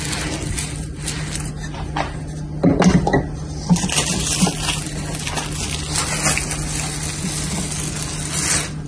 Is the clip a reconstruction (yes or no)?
no